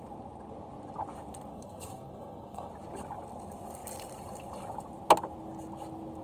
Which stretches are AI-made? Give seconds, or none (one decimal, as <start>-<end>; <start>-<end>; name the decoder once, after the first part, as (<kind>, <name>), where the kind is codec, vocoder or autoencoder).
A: 1.5-2.7 (codec, SNAC)